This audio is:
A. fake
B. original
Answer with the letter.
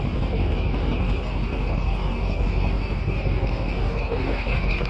A